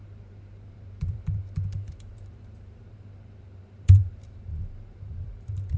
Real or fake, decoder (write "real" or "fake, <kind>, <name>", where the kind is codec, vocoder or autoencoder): fake, vocoder, BigVGAN v2